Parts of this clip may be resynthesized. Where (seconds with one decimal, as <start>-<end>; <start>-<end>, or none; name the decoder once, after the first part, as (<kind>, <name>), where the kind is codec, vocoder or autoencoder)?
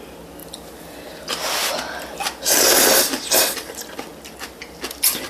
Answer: none